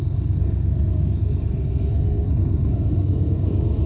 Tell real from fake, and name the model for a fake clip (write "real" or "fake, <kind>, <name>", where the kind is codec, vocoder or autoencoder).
fake, codec, SNAC